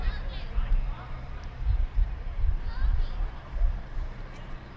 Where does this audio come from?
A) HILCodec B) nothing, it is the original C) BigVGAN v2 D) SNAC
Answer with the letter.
C